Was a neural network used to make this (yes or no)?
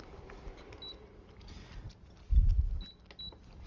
no